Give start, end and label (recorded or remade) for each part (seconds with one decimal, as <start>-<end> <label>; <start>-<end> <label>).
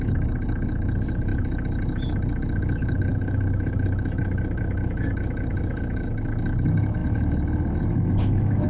0.0-8.7 remade